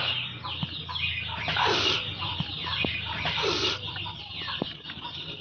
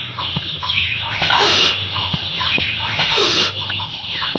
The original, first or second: first